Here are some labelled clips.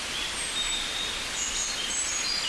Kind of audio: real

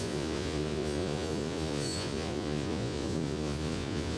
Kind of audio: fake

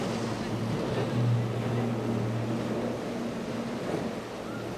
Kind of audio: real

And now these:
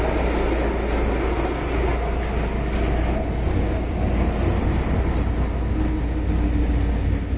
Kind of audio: real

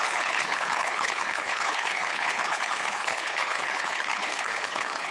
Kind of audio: fake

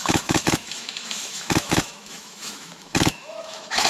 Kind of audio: fake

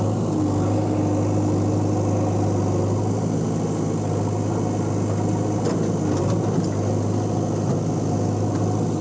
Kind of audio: real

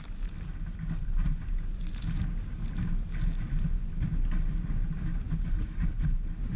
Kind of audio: real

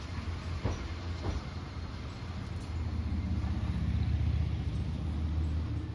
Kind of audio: real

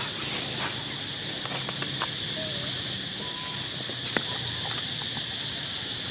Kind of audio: real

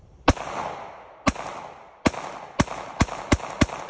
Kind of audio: real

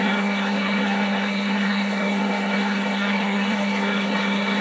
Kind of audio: fake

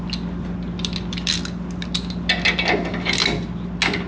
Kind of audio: real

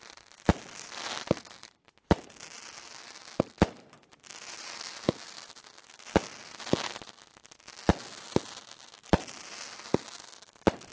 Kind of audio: real